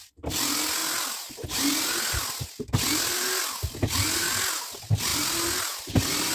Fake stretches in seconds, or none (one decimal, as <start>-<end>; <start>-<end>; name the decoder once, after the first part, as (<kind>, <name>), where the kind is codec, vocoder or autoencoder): none